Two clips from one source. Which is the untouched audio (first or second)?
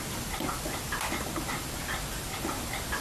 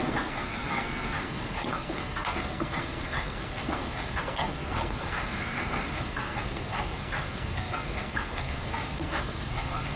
first